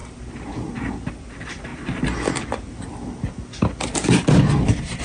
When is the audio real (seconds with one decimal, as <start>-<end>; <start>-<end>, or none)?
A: 0.0-1.1; 1.7-5.0